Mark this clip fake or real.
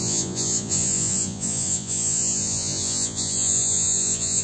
fake